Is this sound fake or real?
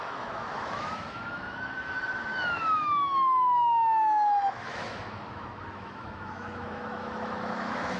fake